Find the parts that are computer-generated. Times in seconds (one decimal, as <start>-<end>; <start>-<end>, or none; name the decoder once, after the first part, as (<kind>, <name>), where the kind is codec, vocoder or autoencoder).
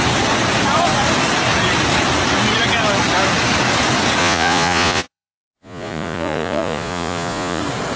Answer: 4.2-7.6 (vocoder, Vocos)